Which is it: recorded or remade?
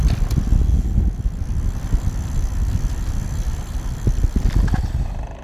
recorded